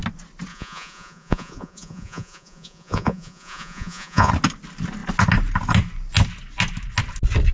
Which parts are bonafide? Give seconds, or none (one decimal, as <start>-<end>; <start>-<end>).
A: 0.0-0.5; 4.3-7.5